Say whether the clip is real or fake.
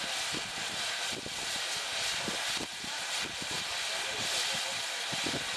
real